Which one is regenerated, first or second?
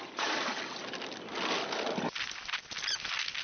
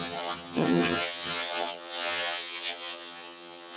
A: second